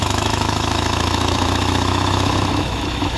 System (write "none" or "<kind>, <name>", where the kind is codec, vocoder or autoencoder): autoencoder, DAC-VAE